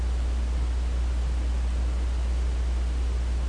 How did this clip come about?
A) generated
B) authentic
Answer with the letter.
B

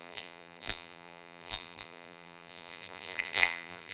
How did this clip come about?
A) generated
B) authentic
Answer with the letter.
A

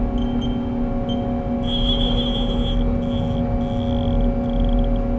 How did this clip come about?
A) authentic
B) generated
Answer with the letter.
A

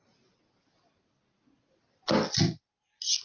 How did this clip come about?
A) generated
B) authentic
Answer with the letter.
B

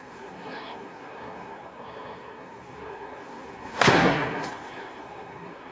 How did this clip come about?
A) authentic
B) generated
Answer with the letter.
B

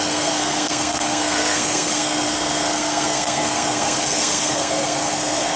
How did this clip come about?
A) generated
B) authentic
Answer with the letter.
A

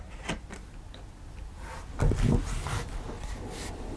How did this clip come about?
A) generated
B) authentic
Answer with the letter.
B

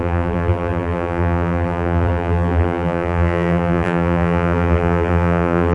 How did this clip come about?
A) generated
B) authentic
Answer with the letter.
A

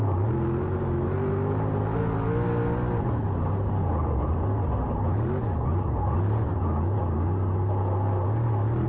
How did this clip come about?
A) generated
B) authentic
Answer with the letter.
B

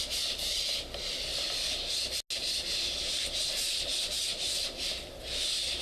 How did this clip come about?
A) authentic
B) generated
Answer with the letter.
A